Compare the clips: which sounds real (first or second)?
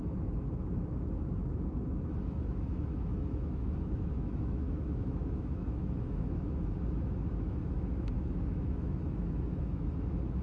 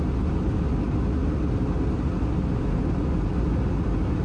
second